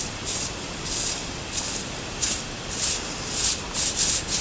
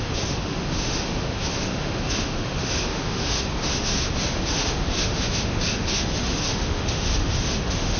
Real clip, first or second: first